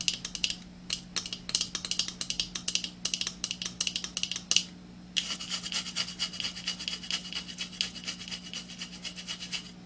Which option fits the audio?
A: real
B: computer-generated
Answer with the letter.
A